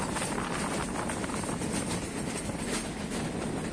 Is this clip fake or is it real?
real